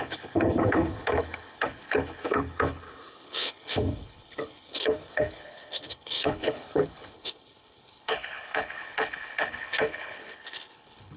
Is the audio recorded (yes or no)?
no